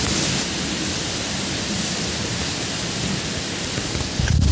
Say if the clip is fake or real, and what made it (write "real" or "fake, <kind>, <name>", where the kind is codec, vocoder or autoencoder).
real